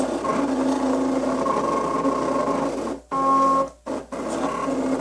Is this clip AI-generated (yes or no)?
no